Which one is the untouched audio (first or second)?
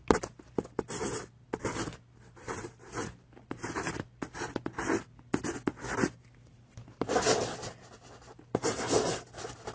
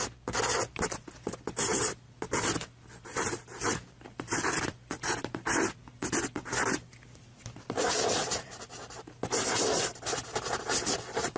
first